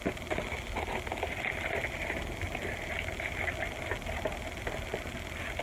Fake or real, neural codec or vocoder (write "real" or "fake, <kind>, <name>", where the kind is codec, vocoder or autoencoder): real